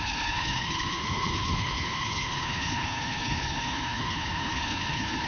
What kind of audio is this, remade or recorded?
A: remade